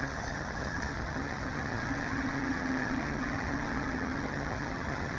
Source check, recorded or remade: remade